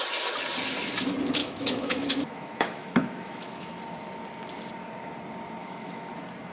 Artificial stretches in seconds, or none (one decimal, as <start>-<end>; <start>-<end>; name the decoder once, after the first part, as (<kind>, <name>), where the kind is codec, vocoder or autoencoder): 1.4-3.7 (autoencoder, DAC-VAE); 5.6-6.1